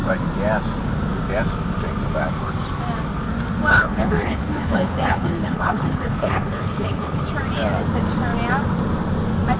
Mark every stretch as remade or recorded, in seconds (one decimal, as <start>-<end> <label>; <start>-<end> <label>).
0.0-3.7 recorded; 3.7-7.2 remade; 7.2-9.6 recorded